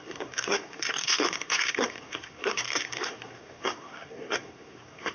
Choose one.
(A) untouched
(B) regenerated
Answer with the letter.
B